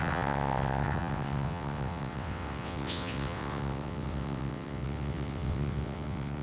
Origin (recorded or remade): remade